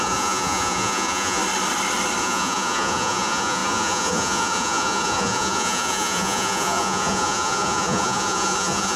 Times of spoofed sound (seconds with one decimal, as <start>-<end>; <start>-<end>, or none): 0.0-1.4; 2.2-9.0